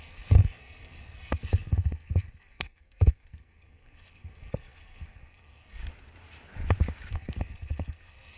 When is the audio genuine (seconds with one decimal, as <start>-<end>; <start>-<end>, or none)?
5.8-7.1